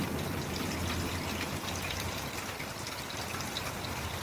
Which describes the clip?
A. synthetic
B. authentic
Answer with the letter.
B